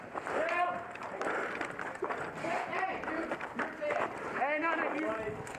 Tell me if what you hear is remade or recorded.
recorded